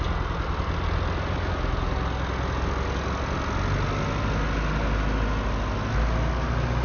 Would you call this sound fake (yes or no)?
no